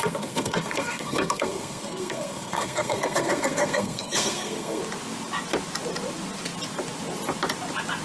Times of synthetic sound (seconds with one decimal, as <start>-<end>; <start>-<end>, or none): 0.0-4.8